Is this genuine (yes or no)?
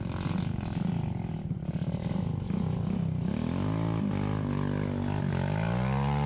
yes